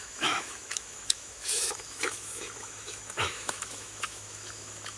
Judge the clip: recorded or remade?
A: remade